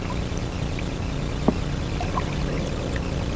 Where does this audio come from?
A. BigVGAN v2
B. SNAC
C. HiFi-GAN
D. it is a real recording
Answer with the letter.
D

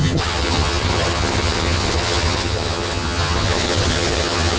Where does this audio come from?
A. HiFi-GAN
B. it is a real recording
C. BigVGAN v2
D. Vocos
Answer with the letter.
A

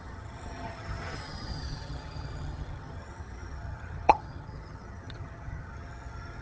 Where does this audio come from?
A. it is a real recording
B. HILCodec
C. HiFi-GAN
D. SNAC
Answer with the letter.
C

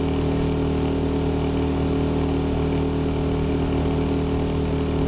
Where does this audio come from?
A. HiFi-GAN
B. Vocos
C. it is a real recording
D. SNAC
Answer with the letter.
C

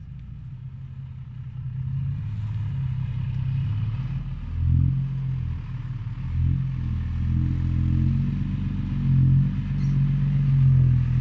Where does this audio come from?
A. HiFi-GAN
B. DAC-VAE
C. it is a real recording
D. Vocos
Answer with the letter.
C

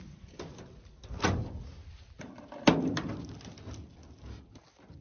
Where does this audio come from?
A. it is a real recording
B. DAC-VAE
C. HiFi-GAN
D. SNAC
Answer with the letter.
A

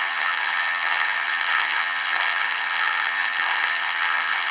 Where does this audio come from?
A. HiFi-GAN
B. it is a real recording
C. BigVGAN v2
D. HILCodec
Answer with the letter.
A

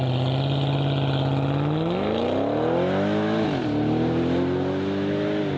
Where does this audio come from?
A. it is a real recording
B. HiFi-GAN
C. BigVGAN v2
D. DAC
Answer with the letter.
A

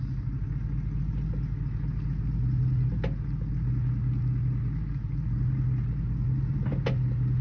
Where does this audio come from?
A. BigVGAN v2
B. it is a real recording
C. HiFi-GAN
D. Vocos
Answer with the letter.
B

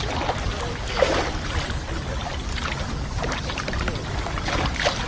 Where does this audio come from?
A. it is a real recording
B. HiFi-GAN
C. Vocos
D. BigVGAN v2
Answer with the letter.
A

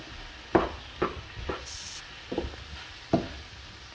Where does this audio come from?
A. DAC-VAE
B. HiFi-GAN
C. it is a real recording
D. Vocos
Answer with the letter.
C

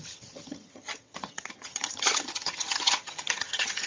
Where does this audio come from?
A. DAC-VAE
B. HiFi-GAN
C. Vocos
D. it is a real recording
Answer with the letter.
B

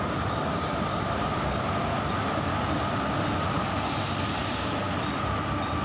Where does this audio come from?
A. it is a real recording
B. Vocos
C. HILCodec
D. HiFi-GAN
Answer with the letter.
A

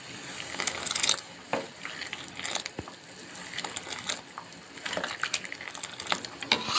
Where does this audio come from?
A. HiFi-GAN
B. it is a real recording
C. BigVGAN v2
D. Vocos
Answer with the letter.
B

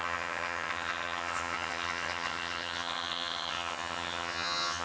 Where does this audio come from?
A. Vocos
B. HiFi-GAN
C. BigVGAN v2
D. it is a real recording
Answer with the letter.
B